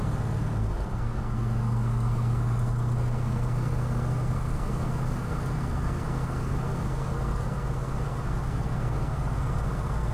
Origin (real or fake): fake